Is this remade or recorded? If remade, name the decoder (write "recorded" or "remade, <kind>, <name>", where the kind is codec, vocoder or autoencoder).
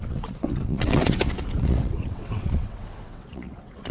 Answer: remade, vocoder, WaveNeXt